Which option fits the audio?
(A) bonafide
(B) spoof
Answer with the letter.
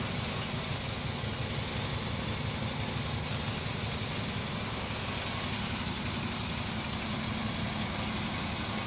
A